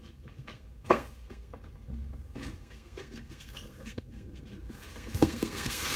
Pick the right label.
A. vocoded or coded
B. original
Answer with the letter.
A